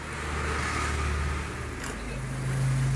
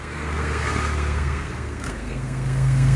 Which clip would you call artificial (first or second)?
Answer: second